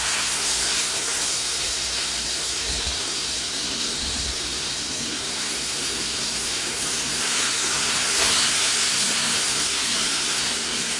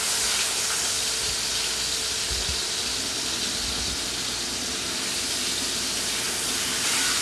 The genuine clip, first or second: second